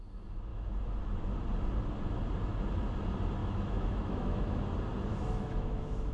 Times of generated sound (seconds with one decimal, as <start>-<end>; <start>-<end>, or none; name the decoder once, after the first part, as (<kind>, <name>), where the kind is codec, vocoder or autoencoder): 0.5-1.0 (autoencoder, DAC-VAE); 3.4-4.6; 5.1-6.1